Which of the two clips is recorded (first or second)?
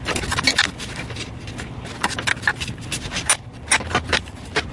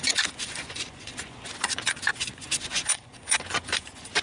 first